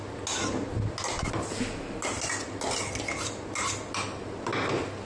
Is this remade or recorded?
recorded